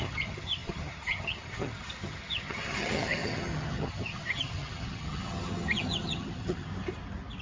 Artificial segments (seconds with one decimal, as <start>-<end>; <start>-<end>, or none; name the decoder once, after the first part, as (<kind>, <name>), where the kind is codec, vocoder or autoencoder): 0.0-6.7 (vocoder, HiFi-GAN)